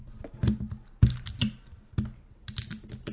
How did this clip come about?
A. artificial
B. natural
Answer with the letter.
B